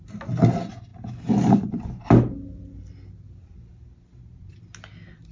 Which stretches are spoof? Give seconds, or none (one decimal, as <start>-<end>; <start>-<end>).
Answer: none